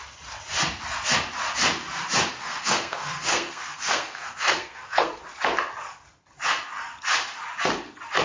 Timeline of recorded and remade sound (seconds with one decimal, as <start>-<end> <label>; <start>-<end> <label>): 0.0-2.3 recorded; 2.3-5.2 remade; 5.2-8.2 recorded

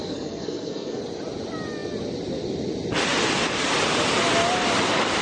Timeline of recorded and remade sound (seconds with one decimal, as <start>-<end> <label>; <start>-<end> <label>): 0.0-1.0 remade; 1.0-5.2 recorded

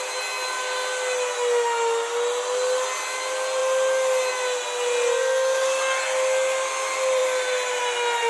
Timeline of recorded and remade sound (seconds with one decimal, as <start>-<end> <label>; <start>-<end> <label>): 0.0-8.3 recorded

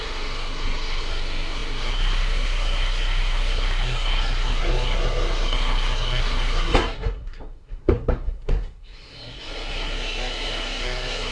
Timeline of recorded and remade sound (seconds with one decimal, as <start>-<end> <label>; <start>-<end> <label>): 0.0-11.3 remade

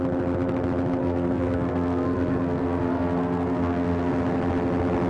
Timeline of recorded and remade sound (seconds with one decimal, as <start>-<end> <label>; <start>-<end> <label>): 0.0-1.0 recorded; 1.0-4.1 remade; 4.1-5.1 recorded

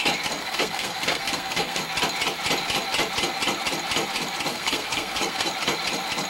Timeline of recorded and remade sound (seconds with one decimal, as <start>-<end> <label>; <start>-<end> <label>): 0.0-0.4 recorded; 0.4-1.8 remade; 1.8-4.5 recorded; 4.5-5.5 remade; 5.5-6.3 recorded

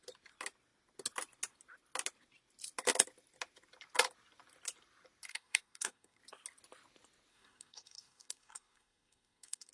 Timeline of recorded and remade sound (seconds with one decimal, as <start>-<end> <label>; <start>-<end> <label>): 0.0-5.3 recorded; 5.3-6.2 remade; 6.2-7.3 recorded; 7.3-9.7 remade

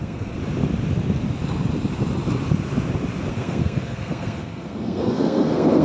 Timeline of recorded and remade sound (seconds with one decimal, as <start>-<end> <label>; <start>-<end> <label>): 0.0-0.4 remade; 0.4-3.3 recorded; 3.3-5.8 remade